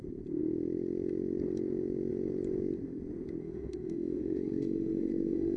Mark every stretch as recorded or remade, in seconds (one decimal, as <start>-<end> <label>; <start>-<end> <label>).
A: 0.0-3.4 recorded; 3.4-5.6 remade